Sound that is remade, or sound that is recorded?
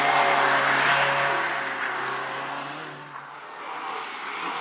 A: recorded